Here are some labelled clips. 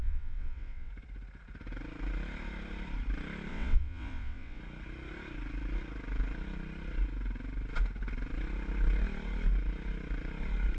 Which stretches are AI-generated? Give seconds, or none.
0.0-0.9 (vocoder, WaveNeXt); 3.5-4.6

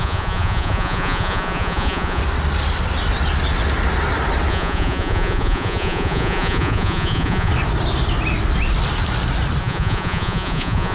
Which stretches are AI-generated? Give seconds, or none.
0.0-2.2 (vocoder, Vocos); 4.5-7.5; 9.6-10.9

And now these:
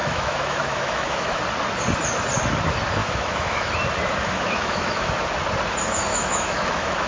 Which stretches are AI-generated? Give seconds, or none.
0.0-1.4 (autoencoder, DAC-VAE); 3.0-3.7; 4.2-5.1; 6.1-7.1